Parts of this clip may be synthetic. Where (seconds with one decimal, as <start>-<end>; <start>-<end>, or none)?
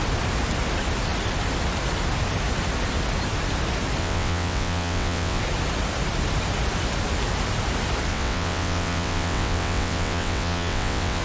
4.0-5.4; 8.1-11.2